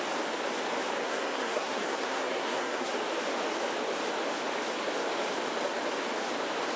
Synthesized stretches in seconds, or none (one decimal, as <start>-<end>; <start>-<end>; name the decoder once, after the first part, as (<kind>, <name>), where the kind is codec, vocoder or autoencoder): 1.0-2.9 (codec, SNAC)